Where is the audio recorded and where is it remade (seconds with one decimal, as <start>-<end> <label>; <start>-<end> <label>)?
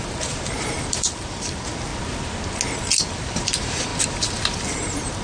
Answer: 0.0-1.9 remade; 1.9-2.8 recorded; 2.8-3.9 remade; 3.9-4.7 recorded; 4.7-5.2 remade